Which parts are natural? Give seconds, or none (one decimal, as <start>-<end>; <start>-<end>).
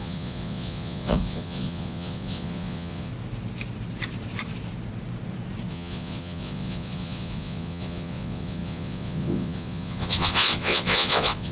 3.1-5.7